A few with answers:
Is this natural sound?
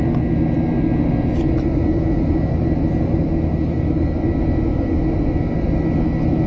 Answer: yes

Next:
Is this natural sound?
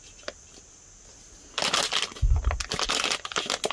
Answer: yes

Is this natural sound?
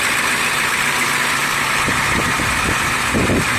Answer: yes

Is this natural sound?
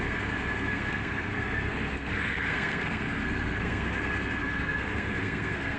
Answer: no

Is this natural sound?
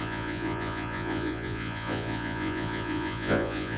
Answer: no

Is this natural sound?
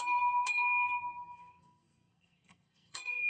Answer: no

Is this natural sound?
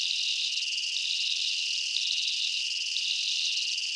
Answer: yes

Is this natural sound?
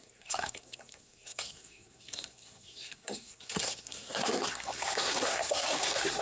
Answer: no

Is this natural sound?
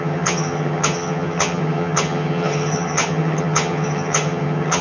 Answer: no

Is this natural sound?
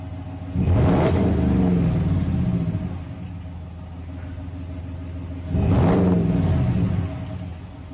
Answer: yes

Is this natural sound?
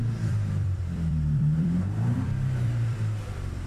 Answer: no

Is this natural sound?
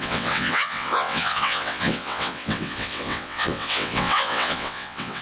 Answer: no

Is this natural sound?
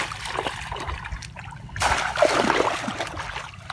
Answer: yes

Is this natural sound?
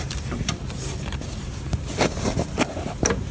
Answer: no